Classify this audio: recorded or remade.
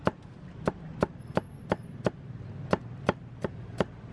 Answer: recorded